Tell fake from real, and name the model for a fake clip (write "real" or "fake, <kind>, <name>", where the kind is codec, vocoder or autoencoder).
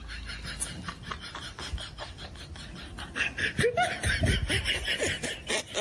real